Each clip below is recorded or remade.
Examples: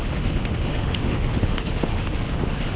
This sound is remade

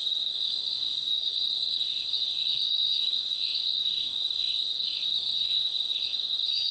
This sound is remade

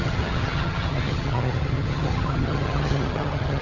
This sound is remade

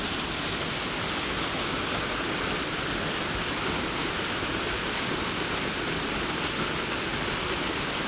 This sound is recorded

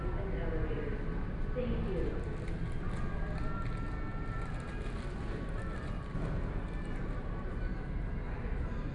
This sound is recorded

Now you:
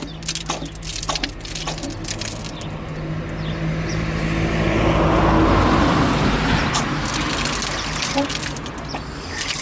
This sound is recorded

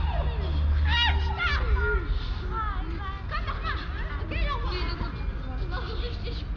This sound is recorded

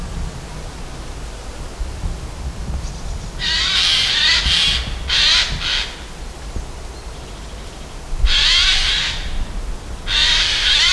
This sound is recorded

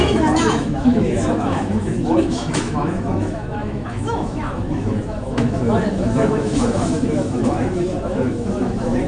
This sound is remade